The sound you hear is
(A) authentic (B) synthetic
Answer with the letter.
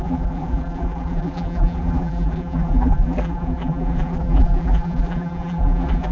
B